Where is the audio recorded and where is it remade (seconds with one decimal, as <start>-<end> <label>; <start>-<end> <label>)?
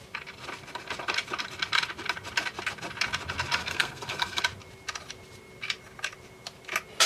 0.0-3.6 recorded; 3.6-4.4 remade; 4.4-7.1 recorded